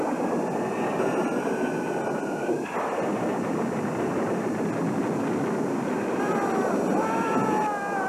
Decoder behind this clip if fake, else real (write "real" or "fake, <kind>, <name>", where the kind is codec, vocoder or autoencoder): real